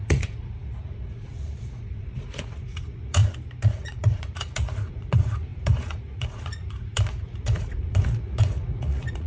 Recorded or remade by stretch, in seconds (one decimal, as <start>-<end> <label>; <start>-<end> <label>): 0.0-3.2 remade; 3.2-3.7 recorded; 3.7-9.3 remade